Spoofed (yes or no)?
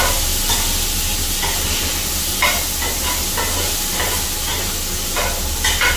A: no